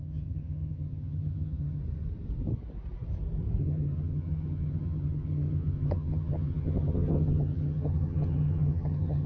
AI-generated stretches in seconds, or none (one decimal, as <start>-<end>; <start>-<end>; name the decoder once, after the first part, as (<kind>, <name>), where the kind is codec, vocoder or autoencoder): 0.0-1.8 (vocoder, HiFi-GAN); 3.6-9.3